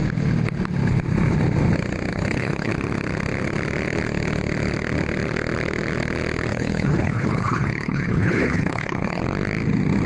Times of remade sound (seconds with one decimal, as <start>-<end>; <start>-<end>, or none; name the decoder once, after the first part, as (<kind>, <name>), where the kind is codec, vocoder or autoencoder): 2.1-2.7 (codec, HILCodec); 6.5-9.2